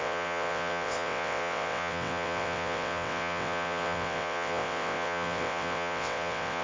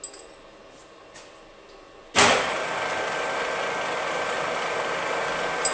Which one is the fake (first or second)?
first